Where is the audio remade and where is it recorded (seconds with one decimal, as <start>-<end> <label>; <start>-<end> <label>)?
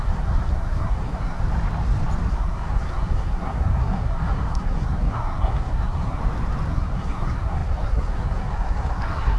0.0-1.4 remade; 1.4-2.3 recorded; 2.3-6.2 remade; 6.2-6.7 recorded; 6.7-9.4 remade